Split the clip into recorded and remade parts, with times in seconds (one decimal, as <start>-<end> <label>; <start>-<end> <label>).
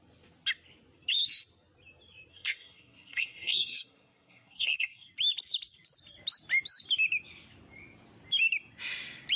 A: 0.0-2.3 recorded; 2.3-5.1 remade; 5.1-9.4 recorded